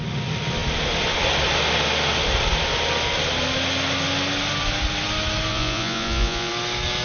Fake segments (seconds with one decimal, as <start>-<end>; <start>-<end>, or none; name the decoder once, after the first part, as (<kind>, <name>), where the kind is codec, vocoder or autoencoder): 5.5-6.5 (vocoder, Vocos)